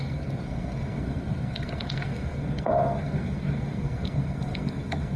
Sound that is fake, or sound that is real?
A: fake